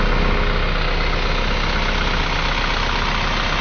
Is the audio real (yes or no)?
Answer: yes